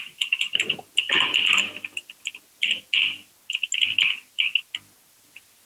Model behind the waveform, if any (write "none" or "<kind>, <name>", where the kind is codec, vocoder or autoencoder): none